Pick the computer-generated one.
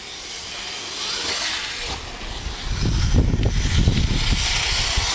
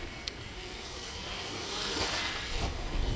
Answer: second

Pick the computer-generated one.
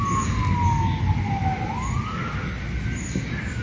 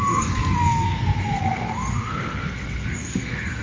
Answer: second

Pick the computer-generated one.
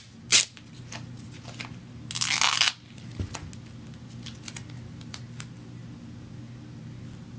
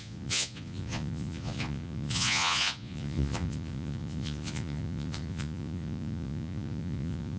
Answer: second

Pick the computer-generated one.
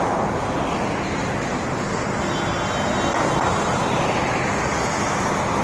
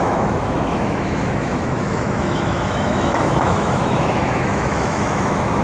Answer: second